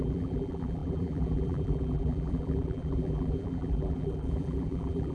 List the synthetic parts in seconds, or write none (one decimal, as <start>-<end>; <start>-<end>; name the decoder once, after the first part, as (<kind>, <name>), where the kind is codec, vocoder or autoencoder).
0.0-5.1 (vocoder, BigVGAN v2)